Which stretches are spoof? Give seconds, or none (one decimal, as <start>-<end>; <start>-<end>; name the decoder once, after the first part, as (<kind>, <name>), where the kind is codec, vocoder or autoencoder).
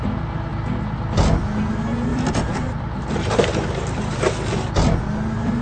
2.1-4.3 (vocoder, BigVGAN v2)